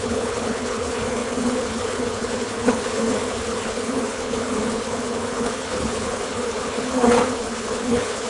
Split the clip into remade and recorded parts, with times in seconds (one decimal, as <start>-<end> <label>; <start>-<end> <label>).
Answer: 0.0-8.3 remade